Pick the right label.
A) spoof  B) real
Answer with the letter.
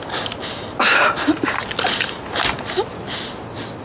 B